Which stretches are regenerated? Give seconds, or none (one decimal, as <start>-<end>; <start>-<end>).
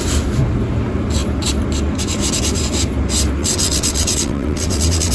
3.4-5.1